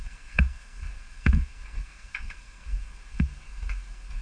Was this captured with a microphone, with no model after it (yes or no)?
no